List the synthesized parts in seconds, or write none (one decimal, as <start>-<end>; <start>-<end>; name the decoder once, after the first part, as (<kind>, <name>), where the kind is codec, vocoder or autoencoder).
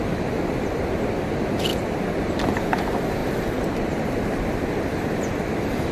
1.7-2.4 (vocoder, BigVGAN v2); 3.2-4.5